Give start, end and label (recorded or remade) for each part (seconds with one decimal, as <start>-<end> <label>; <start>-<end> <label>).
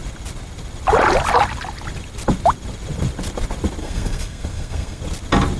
0.0-3.8 recorded; 3.8-5.0 remade; 5.0-5.6 recorded